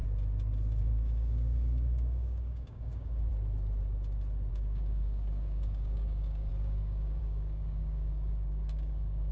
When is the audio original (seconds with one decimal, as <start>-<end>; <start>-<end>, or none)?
0.0-0.8; 3.3-4.5